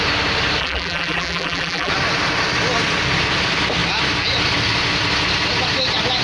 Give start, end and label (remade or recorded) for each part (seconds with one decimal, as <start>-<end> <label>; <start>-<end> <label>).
0.0-0.6 recorded; 0.6-1.9 remade; 1.9-6.2 recorded